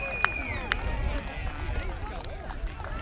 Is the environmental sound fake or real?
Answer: real